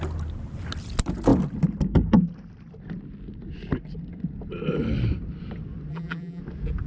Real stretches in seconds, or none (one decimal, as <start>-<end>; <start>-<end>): 0.0-5.9; 6.4-6.9